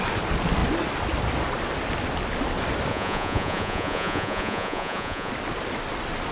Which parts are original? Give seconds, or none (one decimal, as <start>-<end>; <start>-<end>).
0.0-2.9; 5.3-6.3